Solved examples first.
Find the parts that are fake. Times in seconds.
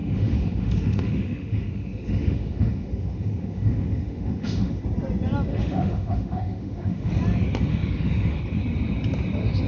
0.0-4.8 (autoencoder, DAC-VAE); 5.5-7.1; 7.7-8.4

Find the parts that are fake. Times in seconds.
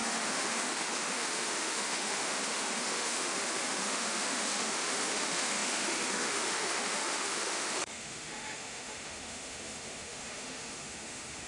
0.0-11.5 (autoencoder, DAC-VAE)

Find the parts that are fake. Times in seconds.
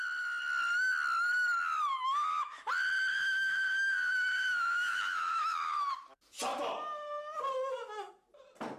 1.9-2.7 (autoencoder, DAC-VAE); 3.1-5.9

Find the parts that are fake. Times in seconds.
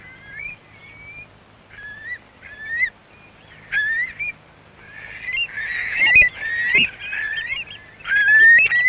5.8-6.3 (autoencoder, DAC-VAE)